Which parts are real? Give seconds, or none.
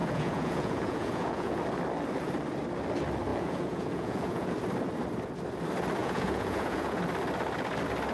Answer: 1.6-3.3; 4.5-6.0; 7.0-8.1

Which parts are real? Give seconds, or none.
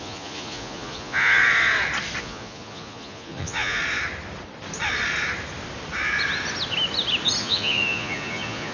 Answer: 1.4-2.2; 3.8-7.4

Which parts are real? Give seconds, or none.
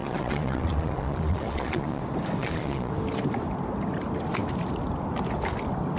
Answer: 2.0-2.4; 2.9-6.0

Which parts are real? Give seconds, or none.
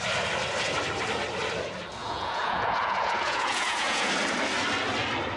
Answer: 0.0-2.0; 4.1-5.4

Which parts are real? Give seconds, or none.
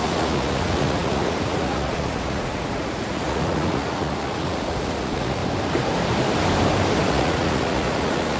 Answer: 5.4-7.1